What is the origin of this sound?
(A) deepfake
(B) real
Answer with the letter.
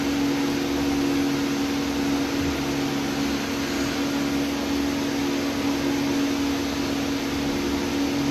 B